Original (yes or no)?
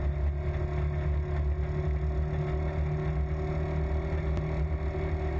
yes